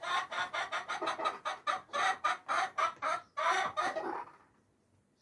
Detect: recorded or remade recorded